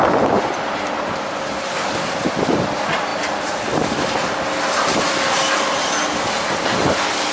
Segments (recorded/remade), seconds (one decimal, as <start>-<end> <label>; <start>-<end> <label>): 0.0-3.1 recorded; 3.1-5.0 remade; 5.0-7.3 recorded